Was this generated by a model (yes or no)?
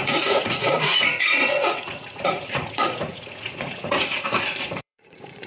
yes